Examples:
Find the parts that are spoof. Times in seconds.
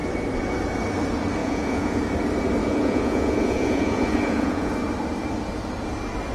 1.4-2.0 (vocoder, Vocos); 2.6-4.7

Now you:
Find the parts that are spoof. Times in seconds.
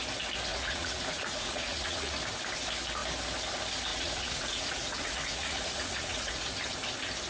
0.5-2.2 (vocoder, Vocos); 3.9-6.5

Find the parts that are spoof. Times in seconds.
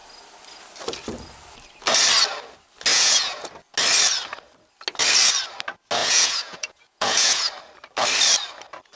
2.9-3.4 (vocoder, Vocos); 6.0-7.5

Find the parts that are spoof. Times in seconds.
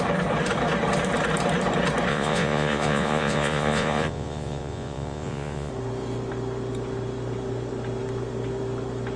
2.1-5.7 (vocoder, Vocos)